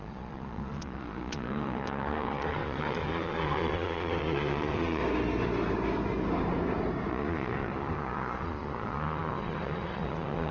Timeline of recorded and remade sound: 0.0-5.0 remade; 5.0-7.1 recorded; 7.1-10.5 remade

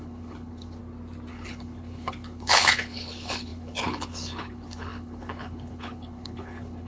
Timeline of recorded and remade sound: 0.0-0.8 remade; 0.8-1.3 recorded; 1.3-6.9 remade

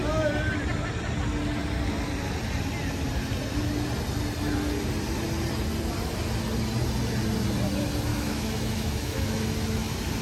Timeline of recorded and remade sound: 0.0-8.1 recorded; 8.1-9.3 remade; 9.3-10.2 recorded

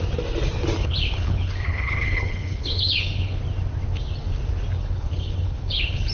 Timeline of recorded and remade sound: 0.0-0.8 recorded; 0.8-3.4 remade; 3.4-4.8 recorded; 4.8-6.1 remade

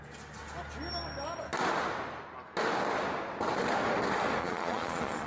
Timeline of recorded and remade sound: 0.0-4.4 recorded; 4.4-5.3 remade

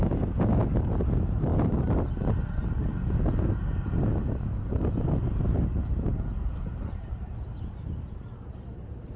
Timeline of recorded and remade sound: 0.0-9.2 recorded

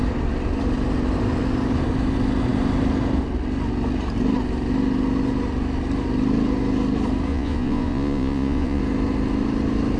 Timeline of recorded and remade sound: 0.0-7.3 recorded; 7.3-8.8 remade; 8.8-10.0 recorded

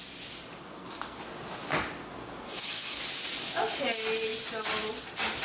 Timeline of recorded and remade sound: 0.0-0.6 recorded; 0.6-1.2 remade; 1.2-2.0 recorded; 2.0-3.0 remade; 3.0-5.4 recorded